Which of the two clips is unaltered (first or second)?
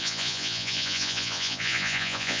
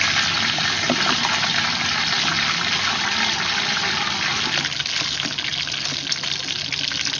second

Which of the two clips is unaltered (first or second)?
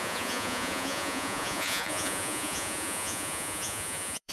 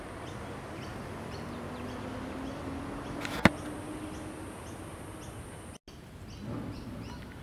second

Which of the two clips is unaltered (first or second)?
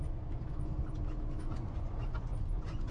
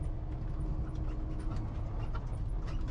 second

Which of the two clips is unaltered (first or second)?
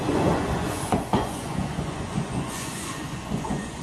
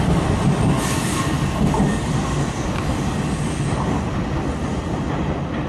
second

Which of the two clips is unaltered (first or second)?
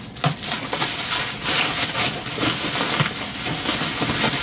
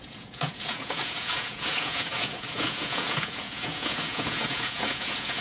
first